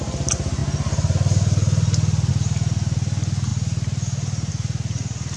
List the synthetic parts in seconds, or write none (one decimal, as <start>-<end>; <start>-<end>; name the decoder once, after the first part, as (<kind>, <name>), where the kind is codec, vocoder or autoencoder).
none